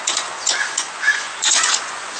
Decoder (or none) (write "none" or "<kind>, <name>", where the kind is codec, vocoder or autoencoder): vocoder, Vocos